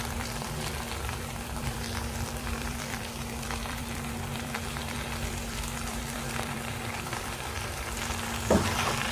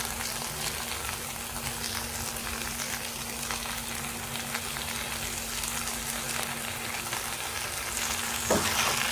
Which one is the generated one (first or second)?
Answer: first